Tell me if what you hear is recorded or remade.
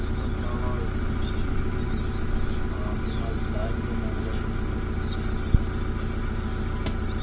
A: recorded